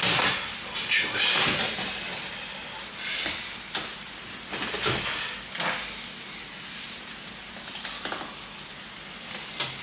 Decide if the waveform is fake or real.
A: real